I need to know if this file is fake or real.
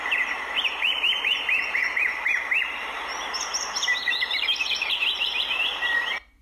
fake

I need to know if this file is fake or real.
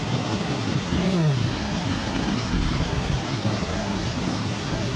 fake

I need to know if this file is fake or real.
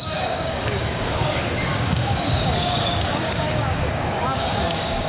fake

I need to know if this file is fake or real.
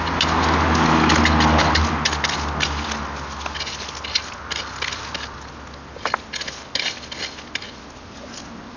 real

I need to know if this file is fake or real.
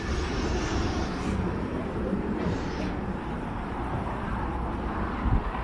fake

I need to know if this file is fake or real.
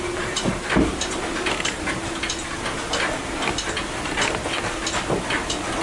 real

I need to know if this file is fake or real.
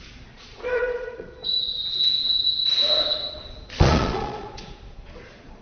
fake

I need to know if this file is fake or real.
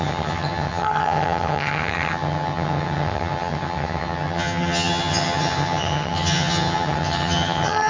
fake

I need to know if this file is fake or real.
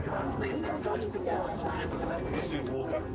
fake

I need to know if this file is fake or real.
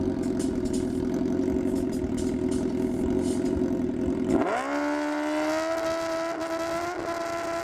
real